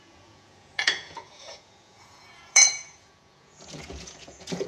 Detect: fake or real fake